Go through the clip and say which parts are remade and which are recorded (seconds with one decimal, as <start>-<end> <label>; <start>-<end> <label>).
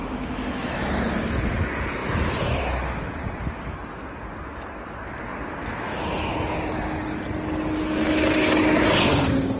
0.0-0.9 remade; 0.9-9.6 recorded